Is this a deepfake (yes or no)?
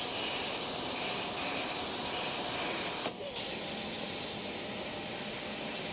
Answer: no